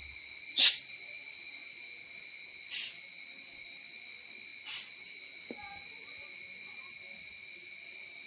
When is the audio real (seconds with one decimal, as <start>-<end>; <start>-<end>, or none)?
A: 0.0-8.3